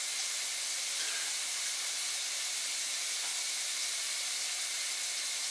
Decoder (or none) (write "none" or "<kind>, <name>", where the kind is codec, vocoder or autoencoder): none